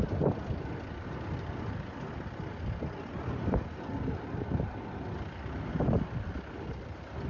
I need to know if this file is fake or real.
real